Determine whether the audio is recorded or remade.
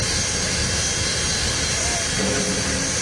recorded